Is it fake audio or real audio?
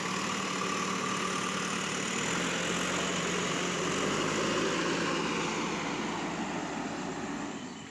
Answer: real